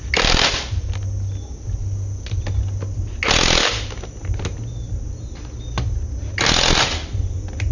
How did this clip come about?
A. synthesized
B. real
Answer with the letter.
B